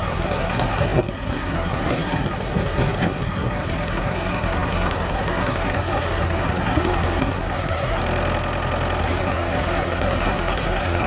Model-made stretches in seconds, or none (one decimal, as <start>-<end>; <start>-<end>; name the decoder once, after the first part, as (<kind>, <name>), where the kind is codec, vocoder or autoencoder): 0.0-8.0 (codec, SNAC); 9.0-11.1